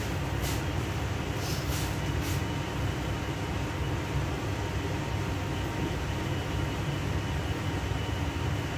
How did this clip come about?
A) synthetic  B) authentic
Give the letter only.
B